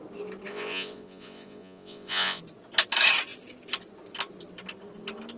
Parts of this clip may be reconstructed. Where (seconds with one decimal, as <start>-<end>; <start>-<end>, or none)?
0.5-2.4